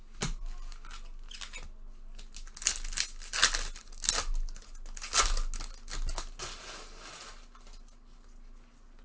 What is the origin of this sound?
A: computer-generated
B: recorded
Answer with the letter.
B